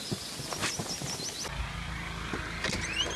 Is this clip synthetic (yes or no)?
no